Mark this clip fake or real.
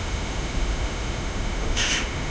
fake